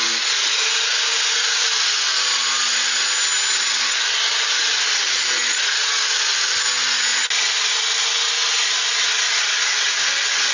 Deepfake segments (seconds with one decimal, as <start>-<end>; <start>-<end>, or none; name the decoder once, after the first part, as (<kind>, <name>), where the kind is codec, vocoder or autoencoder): none